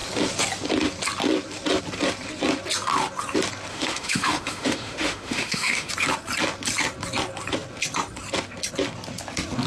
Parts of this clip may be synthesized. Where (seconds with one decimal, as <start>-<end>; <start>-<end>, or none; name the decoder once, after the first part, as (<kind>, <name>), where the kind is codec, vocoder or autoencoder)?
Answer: 3.7-5.9 (autoencoder, DAC-VAE)

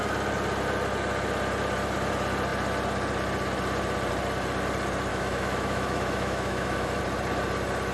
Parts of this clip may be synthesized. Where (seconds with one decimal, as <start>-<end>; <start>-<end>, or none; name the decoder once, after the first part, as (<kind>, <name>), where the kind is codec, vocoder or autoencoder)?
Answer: 5.1-7.0 (autoencoder, DAC-VAE)

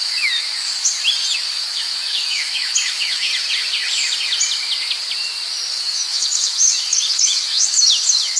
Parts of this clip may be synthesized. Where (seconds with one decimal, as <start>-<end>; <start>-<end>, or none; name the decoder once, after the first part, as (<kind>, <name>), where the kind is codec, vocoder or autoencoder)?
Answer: 0.0-0.7 (autoencoder, DAC-VAE); 1.5-3.3; 5.8-8.4

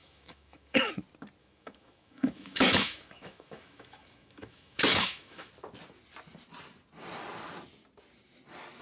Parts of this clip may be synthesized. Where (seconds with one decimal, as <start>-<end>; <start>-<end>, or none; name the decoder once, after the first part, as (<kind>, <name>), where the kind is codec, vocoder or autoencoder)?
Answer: 0.0-0.9 (autoencoder, DAC-VAE); 1.4-5.5

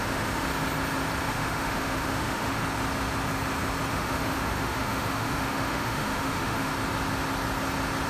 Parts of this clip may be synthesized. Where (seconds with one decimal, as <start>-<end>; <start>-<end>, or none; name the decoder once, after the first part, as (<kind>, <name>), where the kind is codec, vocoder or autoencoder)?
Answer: 0.0-0.5 (autoencoder, DAC-VAE); 1.3-2.6; 3.9-6.7

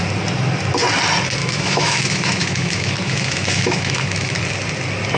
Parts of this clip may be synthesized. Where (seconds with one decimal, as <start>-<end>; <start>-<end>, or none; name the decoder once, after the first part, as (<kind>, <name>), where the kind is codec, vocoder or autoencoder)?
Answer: 1.4-4.4 (autoencoder, DAC-VAE)

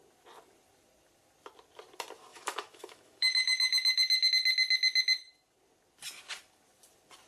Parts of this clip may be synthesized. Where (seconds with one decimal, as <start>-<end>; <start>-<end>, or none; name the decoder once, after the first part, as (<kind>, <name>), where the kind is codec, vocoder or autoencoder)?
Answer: 2.3-4.3 (autoencoder, DAC-VAE)